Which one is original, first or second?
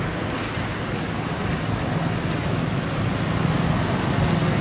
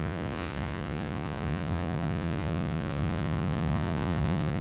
first